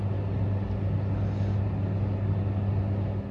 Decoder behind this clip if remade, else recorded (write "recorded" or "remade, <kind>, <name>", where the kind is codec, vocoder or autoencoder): recorded